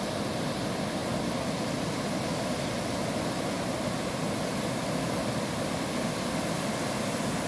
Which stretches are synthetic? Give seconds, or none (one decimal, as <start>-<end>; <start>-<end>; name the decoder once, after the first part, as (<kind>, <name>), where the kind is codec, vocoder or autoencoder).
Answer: none